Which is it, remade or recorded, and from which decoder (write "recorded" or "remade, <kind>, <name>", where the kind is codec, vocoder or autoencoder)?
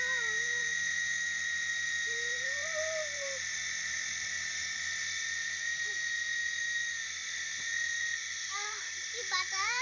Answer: remade, vocoder, BigVGAN v2